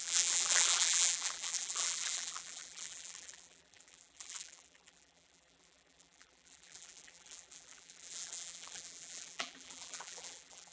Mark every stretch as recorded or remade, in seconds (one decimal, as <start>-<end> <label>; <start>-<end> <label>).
0.0-10.7 remade